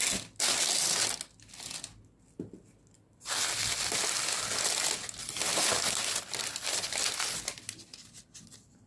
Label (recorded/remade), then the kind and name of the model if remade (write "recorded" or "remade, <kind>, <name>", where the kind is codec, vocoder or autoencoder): recorded